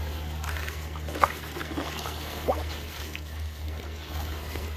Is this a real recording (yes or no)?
no